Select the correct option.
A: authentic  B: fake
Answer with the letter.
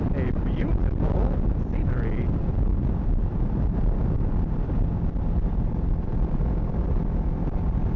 A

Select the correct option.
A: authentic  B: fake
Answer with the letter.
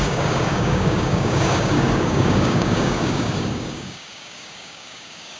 B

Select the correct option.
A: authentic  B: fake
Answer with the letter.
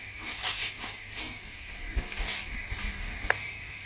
B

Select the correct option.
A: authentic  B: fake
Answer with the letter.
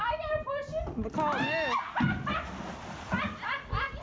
A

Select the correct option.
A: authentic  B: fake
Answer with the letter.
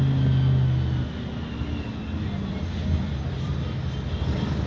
A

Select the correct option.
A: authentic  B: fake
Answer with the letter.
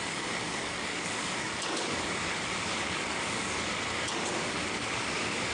B